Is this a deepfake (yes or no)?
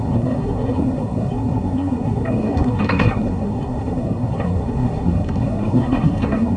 yes